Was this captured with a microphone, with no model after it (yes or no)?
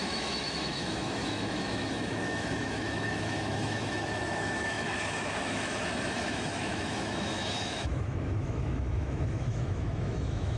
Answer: no